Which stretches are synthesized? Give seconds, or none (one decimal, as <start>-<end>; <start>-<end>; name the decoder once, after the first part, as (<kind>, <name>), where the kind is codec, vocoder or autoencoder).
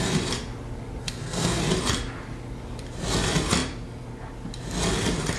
1.0-1.6 (codec, SNAC)